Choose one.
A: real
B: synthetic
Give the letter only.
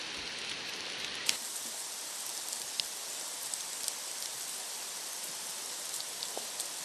A